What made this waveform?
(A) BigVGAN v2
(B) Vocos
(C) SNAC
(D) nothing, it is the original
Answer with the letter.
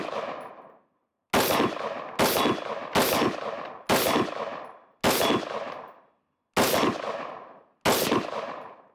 D